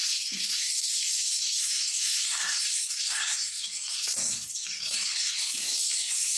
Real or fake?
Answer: fake